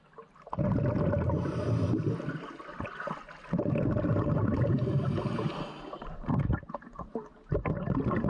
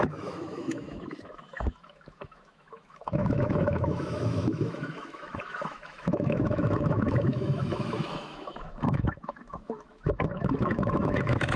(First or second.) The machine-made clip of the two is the second